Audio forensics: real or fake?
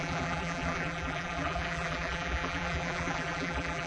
fake